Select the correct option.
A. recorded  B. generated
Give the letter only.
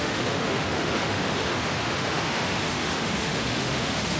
B